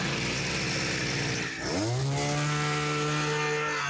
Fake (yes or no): no